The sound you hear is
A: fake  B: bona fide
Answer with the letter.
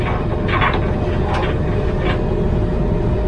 B